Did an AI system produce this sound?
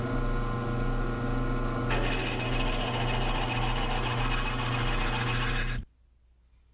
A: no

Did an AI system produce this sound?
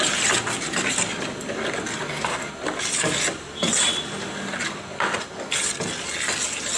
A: no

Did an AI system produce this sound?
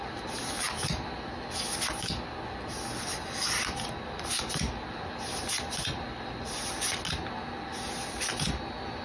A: no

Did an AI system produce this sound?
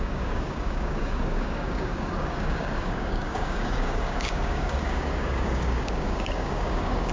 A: yes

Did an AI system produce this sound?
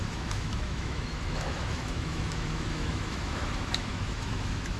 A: yes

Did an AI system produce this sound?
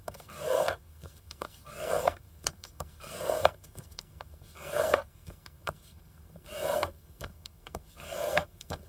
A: yes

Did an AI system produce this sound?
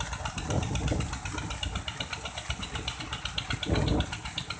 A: no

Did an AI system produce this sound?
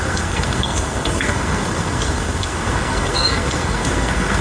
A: yes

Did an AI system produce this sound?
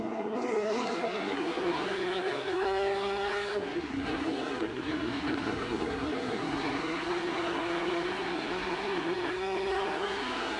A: yes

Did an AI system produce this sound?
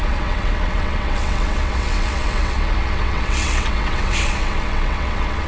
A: yes